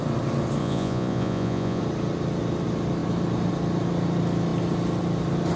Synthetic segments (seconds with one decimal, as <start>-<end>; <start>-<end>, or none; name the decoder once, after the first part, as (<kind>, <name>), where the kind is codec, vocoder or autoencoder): 0.6-1.8 (vocoder, Vocos)